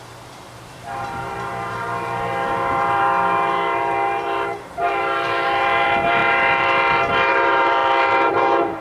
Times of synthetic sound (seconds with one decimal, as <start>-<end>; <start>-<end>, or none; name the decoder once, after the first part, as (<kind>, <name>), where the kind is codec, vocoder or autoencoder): 0.0-8.8 (vocoder, BigVGAN v2)